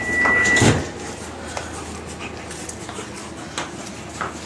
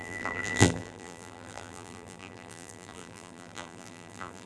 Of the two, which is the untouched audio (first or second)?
first